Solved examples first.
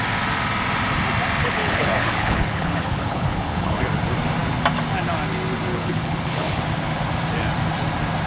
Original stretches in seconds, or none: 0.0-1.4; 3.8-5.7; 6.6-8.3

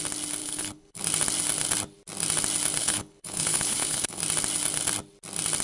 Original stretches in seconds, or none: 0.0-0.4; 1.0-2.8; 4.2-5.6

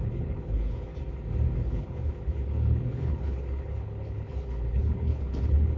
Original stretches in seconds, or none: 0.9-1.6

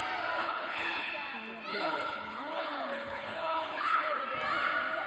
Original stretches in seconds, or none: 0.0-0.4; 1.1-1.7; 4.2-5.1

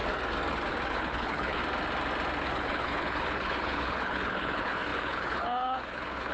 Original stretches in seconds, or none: 0.0-0.9; 1.6-2.4

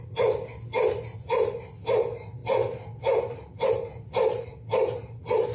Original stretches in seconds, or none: 0.0-5.5